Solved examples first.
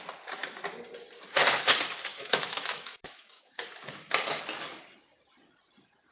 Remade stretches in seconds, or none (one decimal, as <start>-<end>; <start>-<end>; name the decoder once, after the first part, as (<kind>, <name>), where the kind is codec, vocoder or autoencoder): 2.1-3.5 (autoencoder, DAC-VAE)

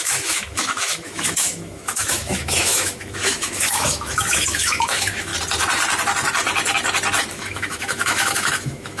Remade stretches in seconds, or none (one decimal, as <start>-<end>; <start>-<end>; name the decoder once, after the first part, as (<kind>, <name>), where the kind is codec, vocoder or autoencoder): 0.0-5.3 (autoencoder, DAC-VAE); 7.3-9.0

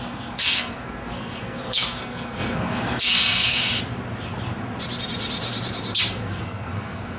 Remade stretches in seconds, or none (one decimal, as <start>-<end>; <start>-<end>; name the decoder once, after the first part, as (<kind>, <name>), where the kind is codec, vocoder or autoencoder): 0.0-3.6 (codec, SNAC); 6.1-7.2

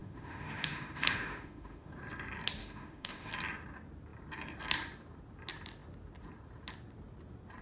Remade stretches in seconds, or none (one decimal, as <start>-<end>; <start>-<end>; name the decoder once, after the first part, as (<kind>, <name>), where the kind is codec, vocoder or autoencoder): 0.0-1.9 (autoencoder, DAC-VAE); 2.6-3.3

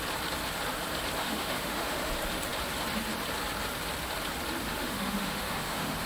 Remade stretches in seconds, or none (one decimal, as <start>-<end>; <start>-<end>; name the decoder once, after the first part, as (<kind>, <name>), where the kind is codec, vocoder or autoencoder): 1.2-2.1 (autoencoder, DAC-VAE); 4.7-6.1

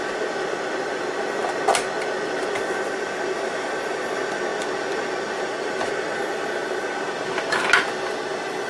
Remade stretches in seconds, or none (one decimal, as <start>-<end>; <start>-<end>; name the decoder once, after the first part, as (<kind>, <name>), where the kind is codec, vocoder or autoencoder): none

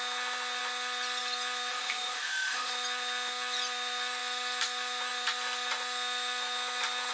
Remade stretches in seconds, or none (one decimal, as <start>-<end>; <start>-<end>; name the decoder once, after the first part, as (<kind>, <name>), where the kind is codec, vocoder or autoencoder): 1.7-2.7 (autoencoder, DAC-VAE)

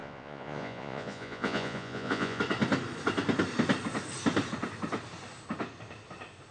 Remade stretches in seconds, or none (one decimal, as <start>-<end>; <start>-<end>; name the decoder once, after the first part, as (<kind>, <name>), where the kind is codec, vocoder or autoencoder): 0.0-2.4 (vocoder, Vocos)